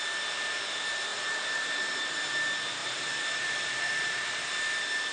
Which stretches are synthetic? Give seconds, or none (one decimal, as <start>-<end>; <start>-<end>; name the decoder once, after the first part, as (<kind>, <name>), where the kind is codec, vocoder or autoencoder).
1.1-2.0 (vocoder, BigVGAN v2); 2.8-4.4